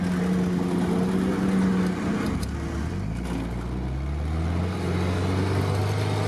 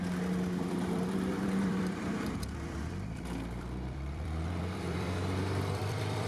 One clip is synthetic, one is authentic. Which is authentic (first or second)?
first